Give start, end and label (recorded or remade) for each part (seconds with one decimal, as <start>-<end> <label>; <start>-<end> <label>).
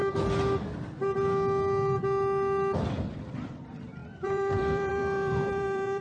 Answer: 0.0-3.1 recorded; 3.1-6.0 remade